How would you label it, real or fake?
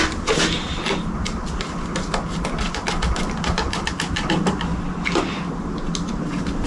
real